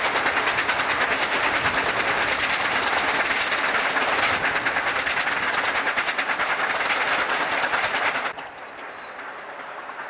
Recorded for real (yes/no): yes